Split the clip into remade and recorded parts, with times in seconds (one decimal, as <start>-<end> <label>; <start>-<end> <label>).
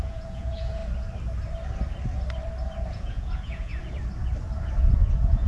0.0-0.8 remade; 0.8-2.9 recorded; 2.9-3.7 remade; 3.7-4.8 recorded; 4.8-5.5 remade